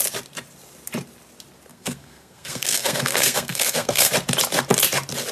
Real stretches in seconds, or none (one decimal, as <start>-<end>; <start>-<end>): 0.0-1.7; 4.1-5.3